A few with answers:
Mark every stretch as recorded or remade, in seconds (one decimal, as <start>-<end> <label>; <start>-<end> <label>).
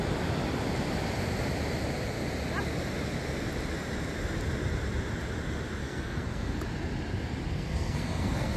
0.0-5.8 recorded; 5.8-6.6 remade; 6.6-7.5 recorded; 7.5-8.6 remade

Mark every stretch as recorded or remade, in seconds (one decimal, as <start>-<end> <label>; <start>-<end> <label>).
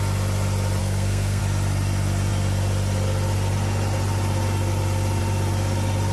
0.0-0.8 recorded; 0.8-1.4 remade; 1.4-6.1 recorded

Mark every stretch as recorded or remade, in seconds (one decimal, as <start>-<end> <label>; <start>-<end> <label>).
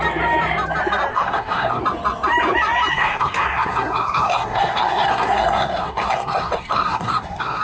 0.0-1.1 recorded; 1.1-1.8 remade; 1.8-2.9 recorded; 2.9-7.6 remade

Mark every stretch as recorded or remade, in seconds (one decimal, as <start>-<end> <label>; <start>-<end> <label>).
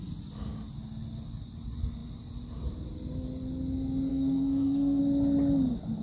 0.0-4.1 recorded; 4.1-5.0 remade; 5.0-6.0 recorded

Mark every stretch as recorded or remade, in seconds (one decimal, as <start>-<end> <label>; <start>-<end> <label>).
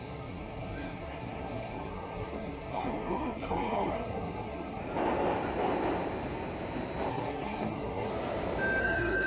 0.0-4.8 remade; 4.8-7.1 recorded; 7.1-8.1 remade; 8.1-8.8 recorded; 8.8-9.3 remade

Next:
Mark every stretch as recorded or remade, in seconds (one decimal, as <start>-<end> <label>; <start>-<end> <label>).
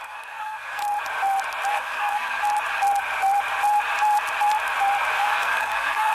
0.0-0.8 remade; 0.8-1.7 recorded; 1.7-2.4 remade; 2.4-5.1 recorded; 5.1-6.1 remade